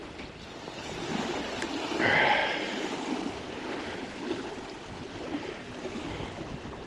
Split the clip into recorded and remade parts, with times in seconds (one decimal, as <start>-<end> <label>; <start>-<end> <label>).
0.0-6.9 recorded